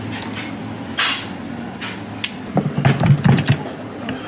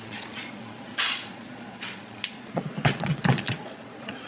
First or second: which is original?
first